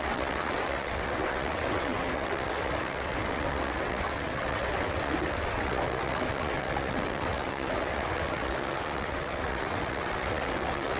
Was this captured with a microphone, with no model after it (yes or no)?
no